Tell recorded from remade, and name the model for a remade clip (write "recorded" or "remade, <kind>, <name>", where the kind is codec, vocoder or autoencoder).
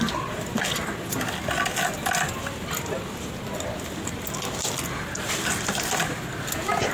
recorded